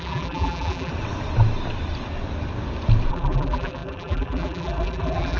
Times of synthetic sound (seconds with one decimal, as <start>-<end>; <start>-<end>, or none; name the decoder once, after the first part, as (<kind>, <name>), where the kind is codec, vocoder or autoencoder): 0.0-0.9 (vocoder, BigVGAN v2); 3.1-5.4